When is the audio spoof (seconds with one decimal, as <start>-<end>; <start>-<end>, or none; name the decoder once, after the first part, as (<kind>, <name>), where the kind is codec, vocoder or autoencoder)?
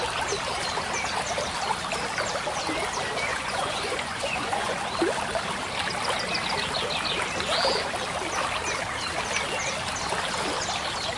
3.3-4.8 (vocoder, Vocos)